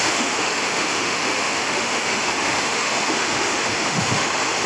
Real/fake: fake